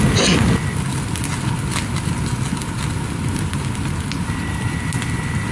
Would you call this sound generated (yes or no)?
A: no